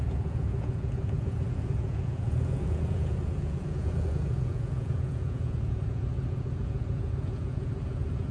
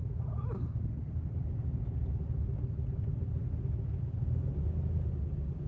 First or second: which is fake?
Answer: first